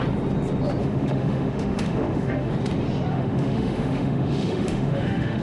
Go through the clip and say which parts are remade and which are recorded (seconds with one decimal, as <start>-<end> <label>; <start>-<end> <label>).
0.0-0.8 recorded; 0.8-2.5 remade; 2.5-3.1 recorded; 3.1-5.4 remade